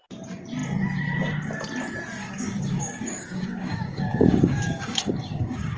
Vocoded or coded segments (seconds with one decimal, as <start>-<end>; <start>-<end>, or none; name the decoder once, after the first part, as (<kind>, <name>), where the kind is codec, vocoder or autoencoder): 2.2-5.8 (codec, DAC)